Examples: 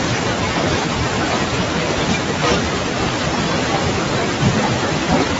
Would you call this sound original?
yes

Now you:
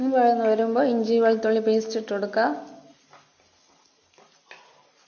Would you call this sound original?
yes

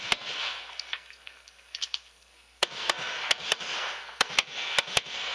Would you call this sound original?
no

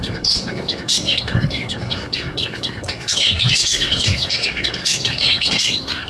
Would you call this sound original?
no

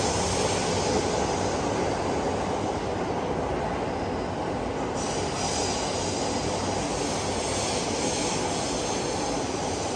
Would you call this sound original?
yes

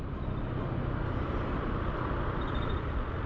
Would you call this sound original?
yes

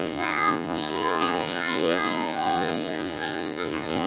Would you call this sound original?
no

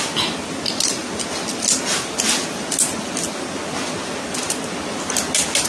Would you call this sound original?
yes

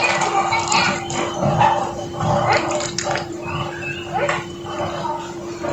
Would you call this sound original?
no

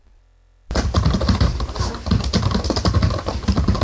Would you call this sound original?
yes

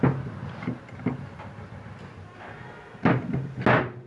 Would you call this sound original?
yes